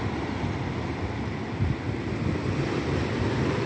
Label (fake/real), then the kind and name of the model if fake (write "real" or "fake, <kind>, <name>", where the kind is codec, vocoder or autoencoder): real